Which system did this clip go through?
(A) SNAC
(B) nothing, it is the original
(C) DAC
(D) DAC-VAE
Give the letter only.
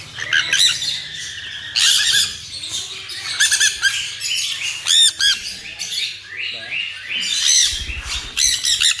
B